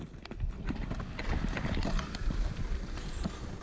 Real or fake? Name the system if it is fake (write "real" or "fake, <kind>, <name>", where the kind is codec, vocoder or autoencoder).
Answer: real